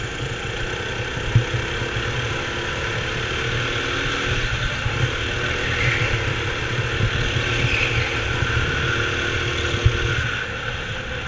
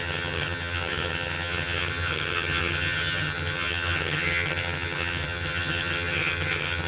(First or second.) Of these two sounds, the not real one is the second